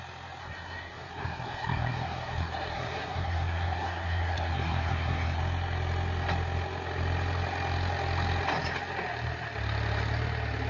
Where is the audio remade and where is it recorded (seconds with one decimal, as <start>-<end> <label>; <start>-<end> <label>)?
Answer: 0.0-0.4 recorded; 0.4-5.4 remade; 5.4-10.7 recorded